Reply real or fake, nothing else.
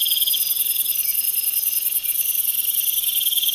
real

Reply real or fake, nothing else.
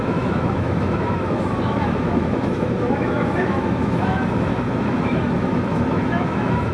fake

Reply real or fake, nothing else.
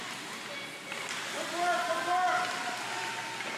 real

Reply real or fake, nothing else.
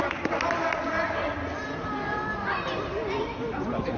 real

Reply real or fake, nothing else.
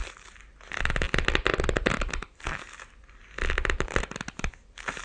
real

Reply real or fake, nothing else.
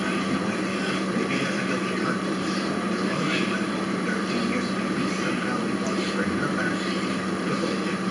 fake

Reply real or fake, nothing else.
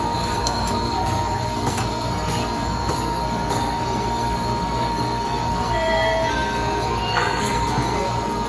fake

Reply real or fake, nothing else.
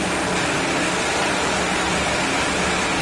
real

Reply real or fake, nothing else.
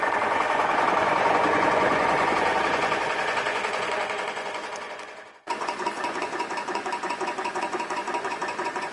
fake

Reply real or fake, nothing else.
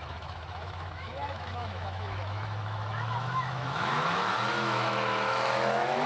fake